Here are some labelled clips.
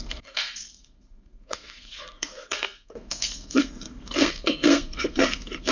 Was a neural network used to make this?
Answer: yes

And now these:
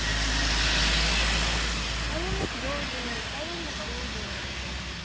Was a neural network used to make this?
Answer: no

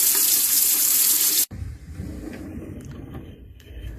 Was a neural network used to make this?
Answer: yes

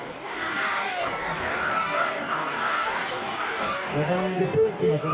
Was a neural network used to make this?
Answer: yes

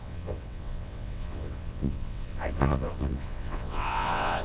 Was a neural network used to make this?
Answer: yes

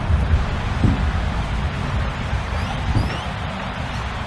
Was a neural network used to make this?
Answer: no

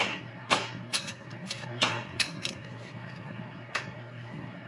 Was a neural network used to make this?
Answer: yes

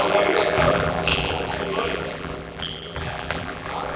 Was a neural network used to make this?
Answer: yes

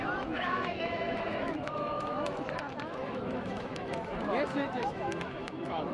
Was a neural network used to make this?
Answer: yes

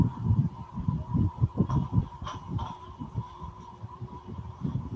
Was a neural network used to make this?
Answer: yes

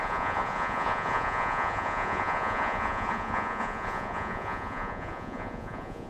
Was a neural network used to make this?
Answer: yes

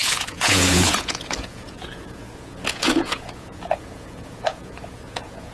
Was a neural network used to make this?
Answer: yes